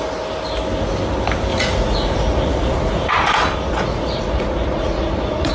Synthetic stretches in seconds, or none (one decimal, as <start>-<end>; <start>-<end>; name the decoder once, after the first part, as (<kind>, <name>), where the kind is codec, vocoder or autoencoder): 1.5-3.1 (vocoder, Vocos); 3.7-5.5